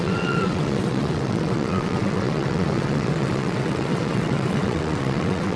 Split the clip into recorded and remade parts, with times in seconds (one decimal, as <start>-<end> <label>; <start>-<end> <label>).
0.0-5.6 remade